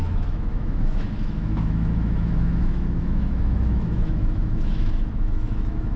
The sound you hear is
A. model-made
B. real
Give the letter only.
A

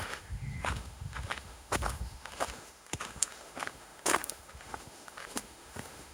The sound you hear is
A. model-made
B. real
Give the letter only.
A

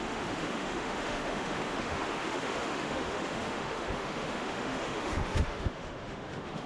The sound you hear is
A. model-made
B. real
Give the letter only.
A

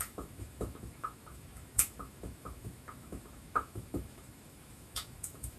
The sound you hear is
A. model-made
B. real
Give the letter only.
A